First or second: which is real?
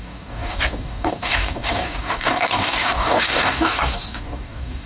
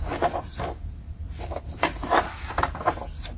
second